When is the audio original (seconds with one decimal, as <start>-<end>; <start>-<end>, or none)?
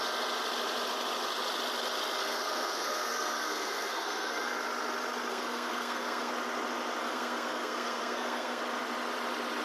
0.0-2.2; 4.5-5.3; 6.3-7.0; 8.6-9.6